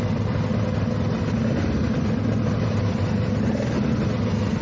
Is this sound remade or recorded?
recorded